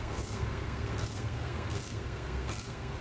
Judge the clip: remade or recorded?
remade